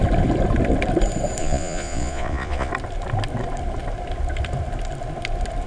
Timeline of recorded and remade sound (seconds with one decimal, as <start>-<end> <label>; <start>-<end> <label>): 0.0-1.4 recorded; 1.4-2.7 remade; 2.7-5.7 recorded